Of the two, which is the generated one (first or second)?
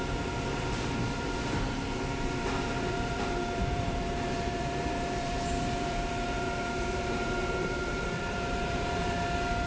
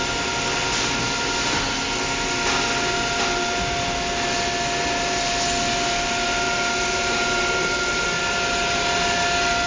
first